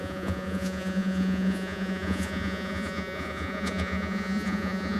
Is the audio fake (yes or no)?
yes